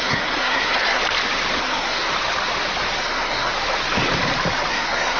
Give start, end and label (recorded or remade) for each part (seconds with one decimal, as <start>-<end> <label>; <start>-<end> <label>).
0.0-1.0 remade; 1.0-1.6 recorded; 1.6-2.1 remade; 2.1-3.0 recorded; 3.0-3.5 remade; 3.5-4.7 recorded; 4.7-5.2 remade